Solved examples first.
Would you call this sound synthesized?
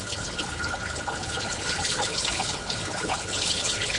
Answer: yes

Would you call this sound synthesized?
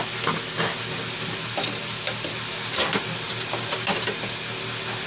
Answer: no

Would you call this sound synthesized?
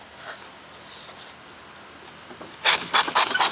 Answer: no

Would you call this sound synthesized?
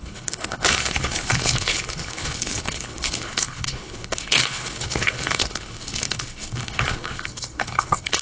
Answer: yes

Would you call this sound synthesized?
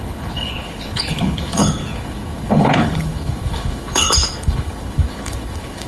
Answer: yes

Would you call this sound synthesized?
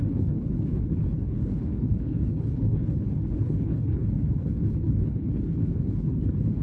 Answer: yes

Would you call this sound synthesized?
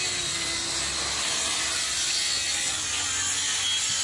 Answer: no